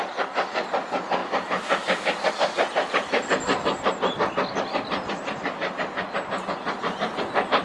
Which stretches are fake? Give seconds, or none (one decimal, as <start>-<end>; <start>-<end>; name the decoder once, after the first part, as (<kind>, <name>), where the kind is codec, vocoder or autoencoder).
none